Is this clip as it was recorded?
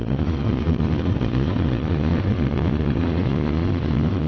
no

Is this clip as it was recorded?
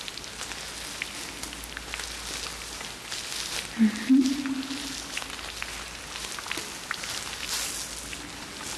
yes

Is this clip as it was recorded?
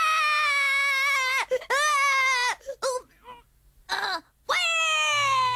yes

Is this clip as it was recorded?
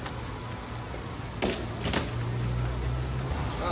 yes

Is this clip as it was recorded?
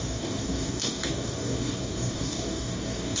no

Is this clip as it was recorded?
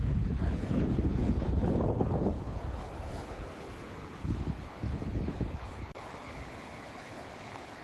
no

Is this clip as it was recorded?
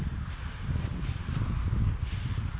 yes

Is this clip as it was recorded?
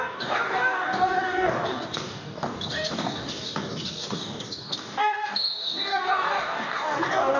no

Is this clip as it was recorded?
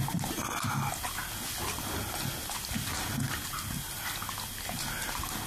yes